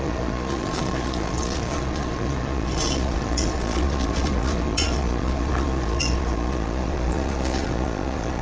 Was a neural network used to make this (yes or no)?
yes